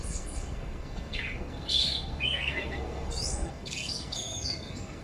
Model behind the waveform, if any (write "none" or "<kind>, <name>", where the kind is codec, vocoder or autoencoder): codec, SNAC